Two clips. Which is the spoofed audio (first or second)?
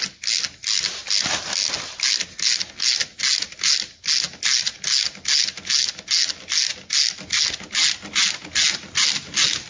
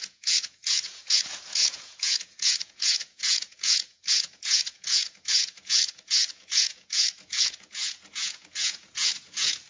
second